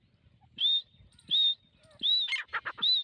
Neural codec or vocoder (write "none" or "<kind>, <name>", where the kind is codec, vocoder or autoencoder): none